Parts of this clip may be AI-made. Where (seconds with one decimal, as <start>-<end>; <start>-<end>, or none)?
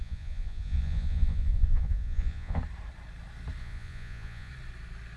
0.0-2.6; 3.6-4.5